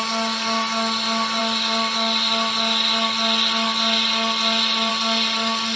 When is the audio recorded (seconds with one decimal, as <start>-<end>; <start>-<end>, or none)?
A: 0.0-5.8